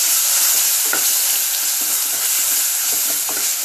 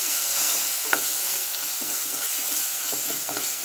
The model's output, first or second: second